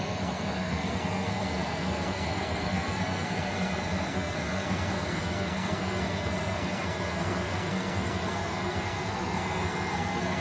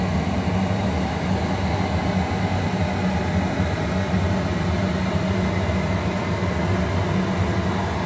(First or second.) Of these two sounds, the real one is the second